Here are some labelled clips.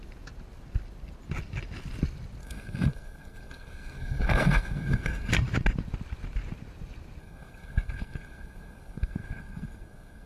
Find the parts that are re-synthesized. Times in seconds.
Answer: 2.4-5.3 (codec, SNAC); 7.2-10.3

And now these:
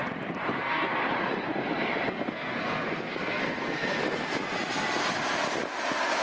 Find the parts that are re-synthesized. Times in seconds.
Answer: 0.6-1.0 (codec, SNAC); 2.1-4.0